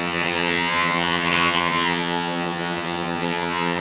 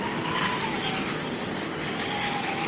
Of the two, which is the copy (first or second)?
first